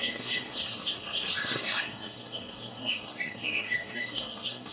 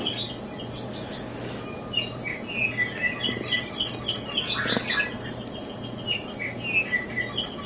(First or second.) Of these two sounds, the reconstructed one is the first